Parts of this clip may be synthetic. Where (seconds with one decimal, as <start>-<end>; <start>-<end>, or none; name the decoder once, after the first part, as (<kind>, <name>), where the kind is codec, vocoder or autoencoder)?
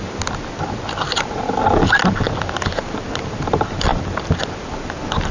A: none